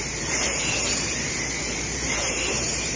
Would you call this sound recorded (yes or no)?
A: no